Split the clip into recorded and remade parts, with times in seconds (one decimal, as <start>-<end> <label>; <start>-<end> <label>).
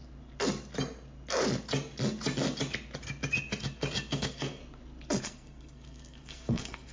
0.0-4.1 recorded; 4.1-4.6 remade; 4.6-5.2 recorded; 5.2-6.9 remade